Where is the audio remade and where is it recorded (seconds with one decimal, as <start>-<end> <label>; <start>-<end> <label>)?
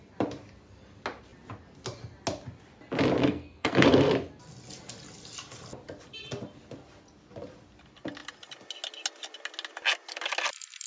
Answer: 0.0-3.2 recorded; 3.2-4.1 remade; 4.1-10.9 recorded